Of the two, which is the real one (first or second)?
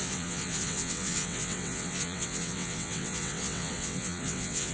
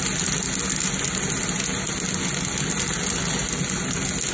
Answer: second